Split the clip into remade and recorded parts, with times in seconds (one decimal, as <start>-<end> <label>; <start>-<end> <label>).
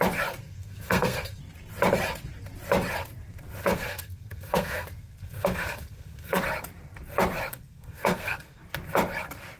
0.0-0.4 recorded; 0.4-1.4 remade; 1.4-3.6 recorded; 3.6-6.4 remade; 6.4-7.5 recorded; 7.5-8.6 remade; 8.6-9.6 recorded